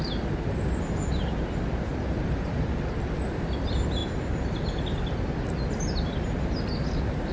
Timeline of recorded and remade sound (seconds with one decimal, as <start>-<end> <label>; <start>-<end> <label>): 0.0-1.9 recorded; 1.9-2.7 remade; 2.7-7.3 recorded